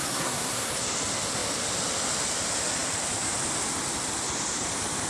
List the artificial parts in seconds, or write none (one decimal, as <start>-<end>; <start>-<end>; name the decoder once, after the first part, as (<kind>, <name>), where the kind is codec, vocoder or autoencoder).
0.0-0.7 (codec, SNAC)